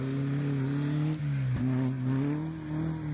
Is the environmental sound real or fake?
real